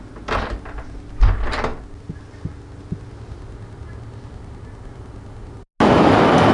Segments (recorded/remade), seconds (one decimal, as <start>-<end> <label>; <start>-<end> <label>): 0.0-6.5 recorded